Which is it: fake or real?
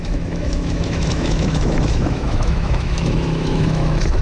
fake